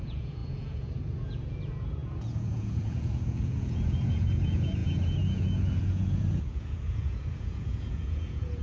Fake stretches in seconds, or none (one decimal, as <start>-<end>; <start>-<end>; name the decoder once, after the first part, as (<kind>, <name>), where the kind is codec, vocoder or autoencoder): 0.0-8.6 (vocoder, Vocos)